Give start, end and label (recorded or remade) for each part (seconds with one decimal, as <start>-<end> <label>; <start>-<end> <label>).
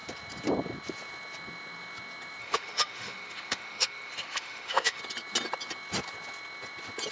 0.0-2.4 recorded; 2.4-5.0 remade; 5.0-7.1 recorded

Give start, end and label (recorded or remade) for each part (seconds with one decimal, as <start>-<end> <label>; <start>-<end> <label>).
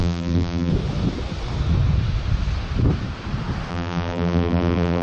0.0-0.7 remade; 0.7-3.7 recorded; 3.7-5.0 remade